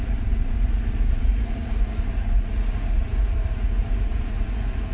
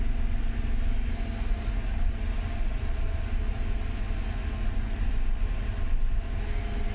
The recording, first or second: second